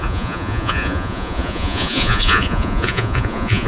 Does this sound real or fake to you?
fake